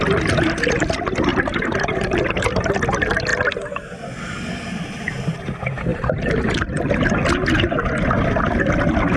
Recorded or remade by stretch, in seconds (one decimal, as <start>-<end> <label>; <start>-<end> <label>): 0.0-1.3 recorded; 1.3-2.7 remade; 2.7-5.9 recorded; 5.9-6.9 remade; 6.9-9.2 recorded